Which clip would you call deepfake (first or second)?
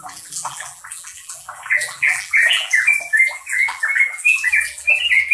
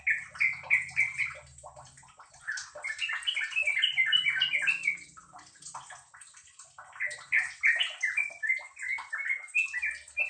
first